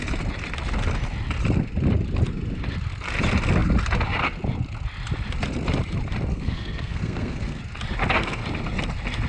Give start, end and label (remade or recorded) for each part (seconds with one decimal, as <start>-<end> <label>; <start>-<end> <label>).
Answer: 0.0-6.3 recorded; 6.3-7.6 remade; 7.6-9.3 recorded

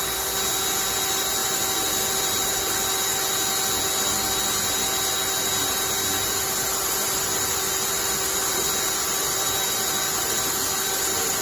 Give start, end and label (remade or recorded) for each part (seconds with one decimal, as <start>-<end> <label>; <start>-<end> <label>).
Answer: 0.0-11.4 recorded

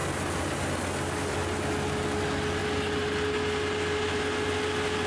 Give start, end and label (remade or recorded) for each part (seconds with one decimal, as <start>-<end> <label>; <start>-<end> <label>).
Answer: 0.0-5.1 recorded

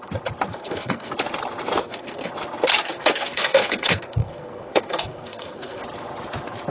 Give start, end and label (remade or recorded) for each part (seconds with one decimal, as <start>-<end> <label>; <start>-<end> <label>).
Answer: 0.0-0.5 recorded; 0.5-1.1 remade; 1.1-1.8 recorded; 1.8-2.3 remade; 2.3-2.8 recorded; 2.8-5.8 remade; 5.8-6.7 recorded

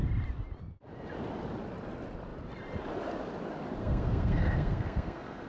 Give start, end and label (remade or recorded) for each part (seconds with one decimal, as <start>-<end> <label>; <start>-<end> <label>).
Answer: 0.0-3.8 recorded; 3.8-5.5 remade